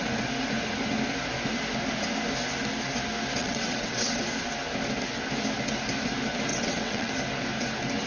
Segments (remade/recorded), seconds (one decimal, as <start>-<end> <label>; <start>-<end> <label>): 0.0-3.4 recorded; 3.4-4.2 remade; 4.2-6.5 recorded; 6.5-7.1 remade; 7.1-8.1 recorded